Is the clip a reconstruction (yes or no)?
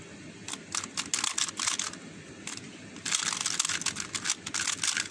no